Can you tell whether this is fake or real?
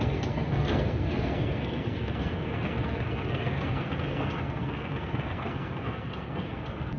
fake